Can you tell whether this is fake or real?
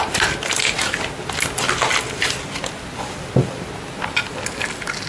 real